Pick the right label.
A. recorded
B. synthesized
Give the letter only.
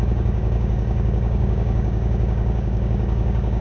B